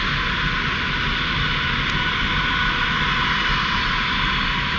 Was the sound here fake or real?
real